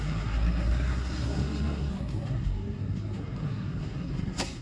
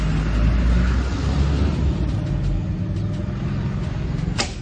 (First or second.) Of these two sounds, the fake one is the first